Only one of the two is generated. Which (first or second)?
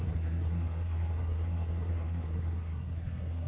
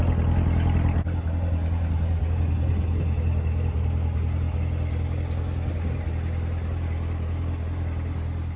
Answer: first